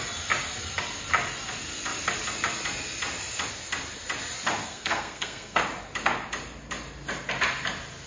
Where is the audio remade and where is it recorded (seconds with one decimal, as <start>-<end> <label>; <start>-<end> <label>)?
0.0-4.6 recorded; 4.6-5.6 remade; 5.6-8.1 recorded